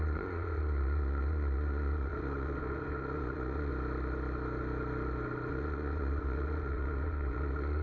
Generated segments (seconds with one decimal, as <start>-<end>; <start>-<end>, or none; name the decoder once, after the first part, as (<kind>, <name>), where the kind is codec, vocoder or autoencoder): 0.0-3.7 (vocoder, Vocos); 5.5-7.8